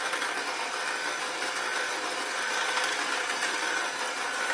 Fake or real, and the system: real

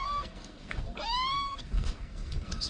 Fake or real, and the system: fake, codec, SNAC